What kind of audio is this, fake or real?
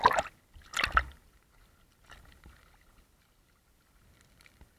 real